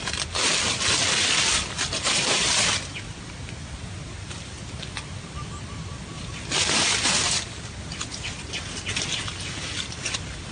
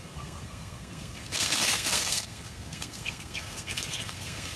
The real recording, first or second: first